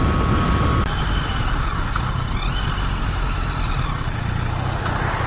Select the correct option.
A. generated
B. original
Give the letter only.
B